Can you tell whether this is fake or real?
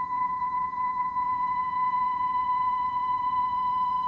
fake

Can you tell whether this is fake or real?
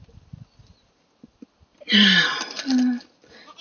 real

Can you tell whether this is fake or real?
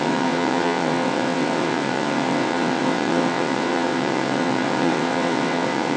fake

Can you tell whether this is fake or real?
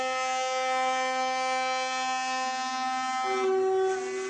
real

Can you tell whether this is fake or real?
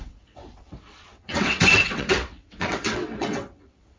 fake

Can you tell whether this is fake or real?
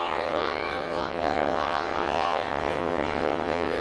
fake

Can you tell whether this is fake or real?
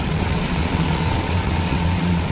fake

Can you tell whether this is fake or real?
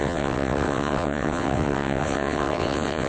fake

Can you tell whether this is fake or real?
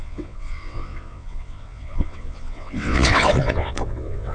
fake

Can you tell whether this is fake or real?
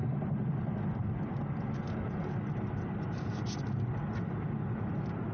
real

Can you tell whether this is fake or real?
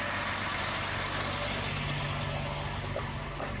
real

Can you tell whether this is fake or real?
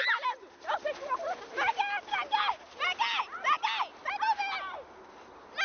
real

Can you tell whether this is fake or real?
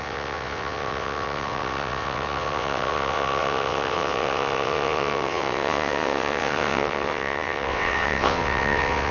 fake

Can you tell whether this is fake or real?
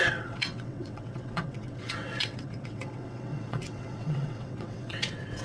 fake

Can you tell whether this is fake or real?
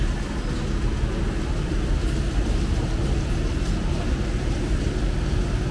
real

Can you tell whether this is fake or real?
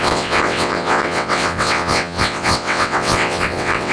fake